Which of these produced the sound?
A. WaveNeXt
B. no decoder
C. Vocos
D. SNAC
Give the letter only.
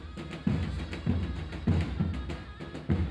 B